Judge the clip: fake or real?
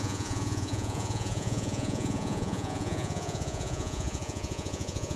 fake